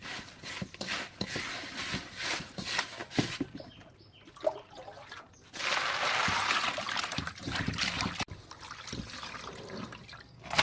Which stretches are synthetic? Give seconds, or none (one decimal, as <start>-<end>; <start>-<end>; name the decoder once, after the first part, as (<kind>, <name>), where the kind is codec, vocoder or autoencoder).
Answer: none